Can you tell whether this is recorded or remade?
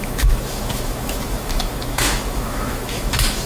remade